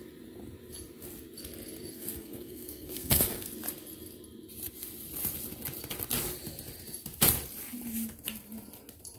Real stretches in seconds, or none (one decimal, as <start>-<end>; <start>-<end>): 0.0-1.9; 3.5-9.2